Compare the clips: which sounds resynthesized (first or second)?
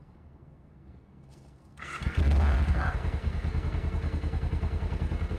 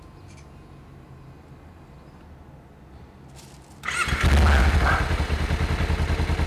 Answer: first